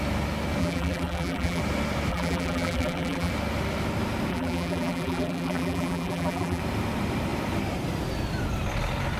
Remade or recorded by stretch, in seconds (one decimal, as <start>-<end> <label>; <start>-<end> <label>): 0.0-0.6 recorded; 0.6-1.6 remade; 1.6-2.1 recorded; 2.1-3.3 remade; 3.3-4.3 recorded; 4.3-6.6 remade; 6.6-9.2 recorded